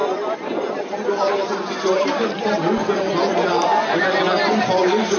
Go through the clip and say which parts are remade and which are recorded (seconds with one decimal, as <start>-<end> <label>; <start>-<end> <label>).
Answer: 0.0-5.2 recorded